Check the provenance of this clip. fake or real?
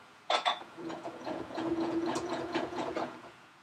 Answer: fake